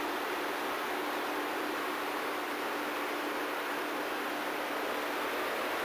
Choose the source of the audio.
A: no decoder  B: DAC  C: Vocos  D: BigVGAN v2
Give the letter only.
A